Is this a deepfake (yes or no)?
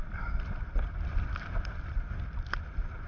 no